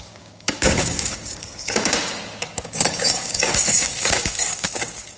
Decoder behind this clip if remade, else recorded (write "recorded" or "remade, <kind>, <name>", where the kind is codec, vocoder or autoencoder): remade, codec, DAC